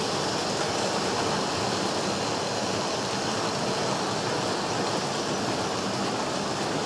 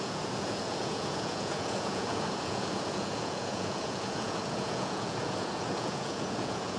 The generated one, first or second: second